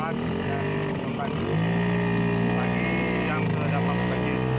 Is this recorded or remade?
recorded